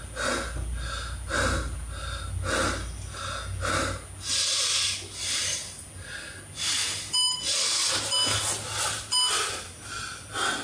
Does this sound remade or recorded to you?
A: recorded